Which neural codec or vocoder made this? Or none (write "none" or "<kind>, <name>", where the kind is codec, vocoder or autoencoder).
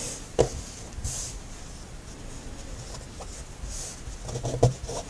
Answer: none